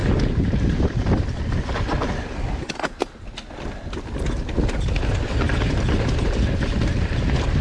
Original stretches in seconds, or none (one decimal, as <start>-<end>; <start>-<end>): 1.4-7.6